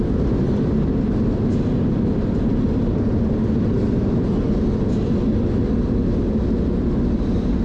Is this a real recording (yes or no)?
yes